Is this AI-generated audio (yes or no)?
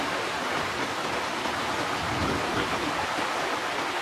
no